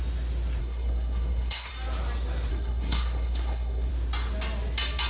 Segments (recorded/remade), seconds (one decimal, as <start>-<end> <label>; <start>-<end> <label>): 0.0-0.6 recorded; 0.6-1.7 remade; 1.7-2.5 recorded; 2.5-3.9 remade; 3.9-5.1 recorded